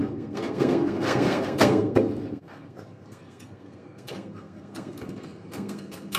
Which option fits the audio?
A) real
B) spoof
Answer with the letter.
B